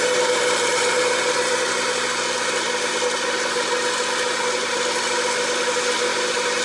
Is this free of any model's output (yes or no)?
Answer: yes